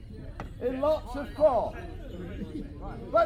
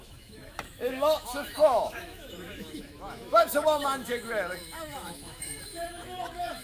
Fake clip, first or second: second